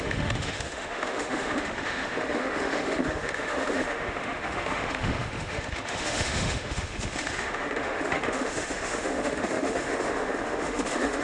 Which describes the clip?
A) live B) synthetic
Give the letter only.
B